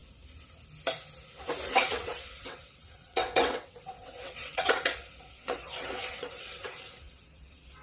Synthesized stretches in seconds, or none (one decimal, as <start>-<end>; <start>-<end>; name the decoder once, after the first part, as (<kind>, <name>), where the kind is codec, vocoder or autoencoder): 1.7-7.8 (vocoder, WaveNeXt)